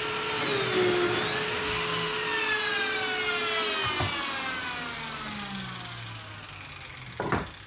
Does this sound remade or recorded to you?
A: recorded